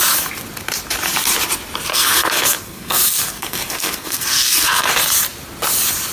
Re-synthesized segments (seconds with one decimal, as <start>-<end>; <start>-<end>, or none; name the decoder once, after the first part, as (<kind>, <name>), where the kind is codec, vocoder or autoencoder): 1.9-4.9 (codec, SNAC)